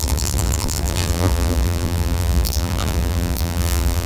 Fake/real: fake